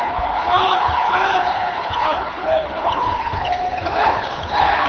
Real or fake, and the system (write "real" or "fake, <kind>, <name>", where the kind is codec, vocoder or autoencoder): fake, codec, HILCodec